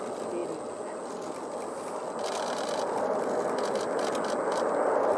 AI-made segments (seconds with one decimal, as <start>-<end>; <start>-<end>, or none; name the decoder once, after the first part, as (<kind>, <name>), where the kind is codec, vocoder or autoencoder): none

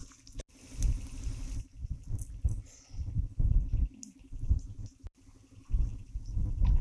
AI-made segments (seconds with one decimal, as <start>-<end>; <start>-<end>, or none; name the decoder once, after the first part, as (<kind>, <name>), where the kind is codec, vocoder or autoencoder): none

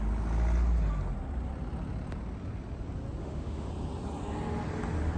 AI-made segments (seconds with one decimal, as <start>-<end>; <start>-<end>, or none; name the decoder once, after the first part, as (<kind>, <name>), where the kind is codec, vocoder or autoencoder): 3.2-3.7 (autoencoder, DAC-VAE)

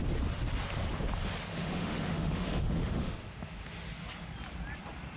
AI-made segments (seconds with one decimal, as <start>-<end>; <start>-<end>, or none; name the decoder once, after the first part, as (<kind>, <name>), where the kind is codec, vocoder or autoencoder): 1.5-3.9 (autoencoder, DAC-VAE)

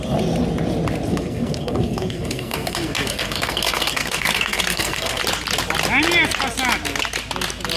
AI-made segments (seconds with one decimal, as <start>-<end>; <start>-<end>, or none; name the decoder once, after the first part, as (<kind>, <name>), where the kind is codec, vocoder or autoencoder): 1.1-5.2 (codec, SNAC)

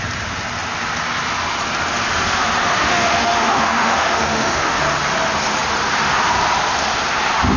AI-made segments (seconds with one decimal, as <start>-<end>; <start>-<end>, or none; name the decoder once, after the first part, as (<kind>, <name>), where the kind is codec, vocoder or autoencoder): 2.7-4.8 (autoencoder, DAC-VAE)

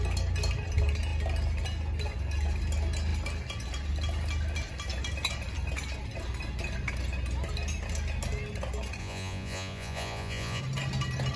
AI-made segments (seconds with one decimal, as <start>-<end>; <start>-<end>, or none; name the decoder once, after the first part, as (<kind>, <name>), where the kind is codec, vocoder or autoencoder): 9.0-10.6 (vocoder, Vocos)